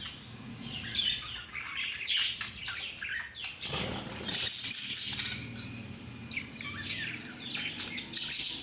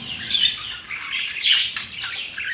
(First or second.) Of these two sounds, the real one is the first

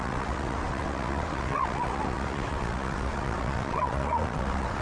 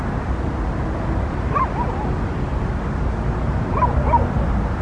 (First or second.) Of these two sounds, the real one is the second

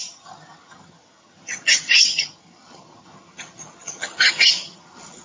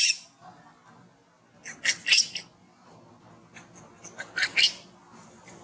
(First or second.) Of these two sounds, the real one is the second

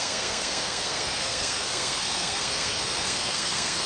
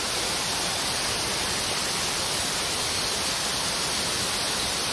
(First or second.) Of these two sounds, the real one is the second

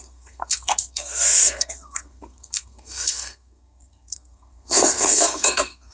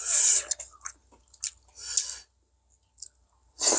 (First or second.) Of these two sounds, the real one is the second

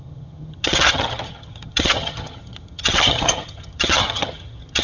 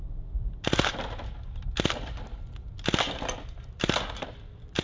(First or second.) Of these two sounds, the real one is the second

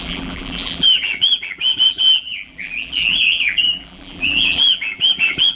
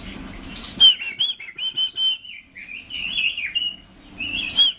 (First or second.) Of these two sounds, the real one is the second